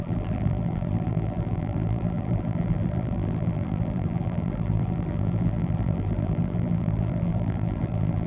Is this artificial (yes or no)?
yes